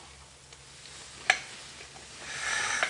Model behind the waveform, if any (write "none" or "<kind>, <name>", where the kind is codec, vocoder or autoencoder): none